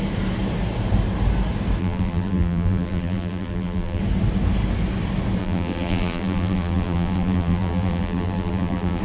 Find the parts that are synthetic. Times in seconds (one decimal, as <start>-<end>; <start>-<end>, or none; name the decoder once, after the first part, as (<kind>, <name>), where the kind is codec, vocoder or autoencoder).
1.8-4.0 (vocoder, BigVGAN v2); 5.4-9.0